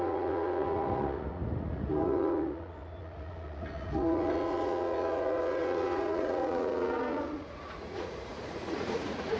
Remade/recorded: remade